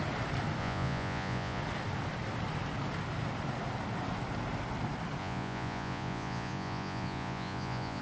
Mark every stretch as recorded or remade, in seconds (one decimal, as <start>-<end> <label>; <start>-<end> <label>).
0.0-0.6 recorded; 0.6-1.6 remade; 1.6-5.2 recorded; 5.2-8.0 remade